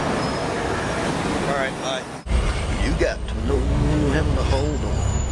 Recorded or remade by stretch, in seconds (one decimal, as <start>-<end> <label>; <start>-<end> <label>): 0.0-3.4 recorded; 3.4-4.2 remade; 4.2-5.3 recorded